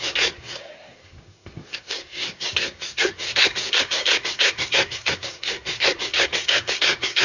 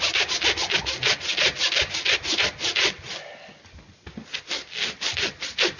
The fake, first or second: first